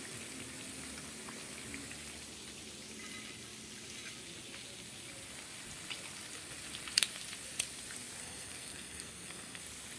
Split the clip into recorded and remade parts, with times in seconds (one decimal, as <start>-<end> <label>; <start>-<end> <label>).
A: 0.0-8.2 recorded; 8.2-9.6 remade; 9.6-10.0 recorded